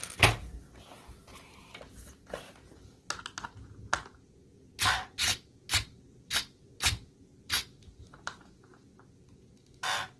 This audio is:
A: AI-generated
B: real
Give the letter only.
B